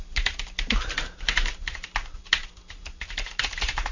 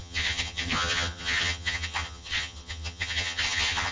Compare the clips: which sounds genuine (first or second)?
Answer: first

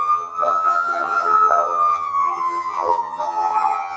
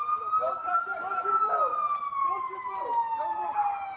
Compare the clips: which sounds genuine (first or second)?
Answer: second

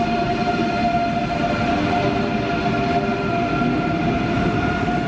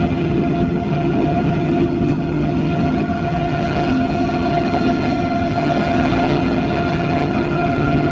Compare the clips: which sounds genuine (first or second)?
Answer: first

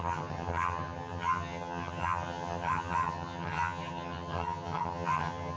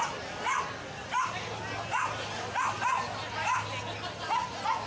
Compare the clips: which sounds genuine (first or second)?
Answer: second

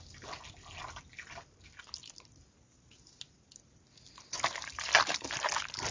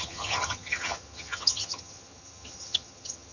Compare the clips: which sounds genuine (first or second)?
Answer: first